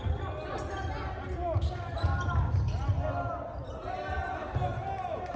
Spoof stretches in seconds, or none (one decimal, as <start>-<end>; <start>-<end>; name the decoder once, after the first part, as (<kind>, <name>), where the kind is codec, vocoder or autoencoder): none